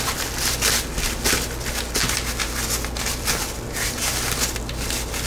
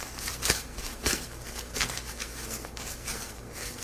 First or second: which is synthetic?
second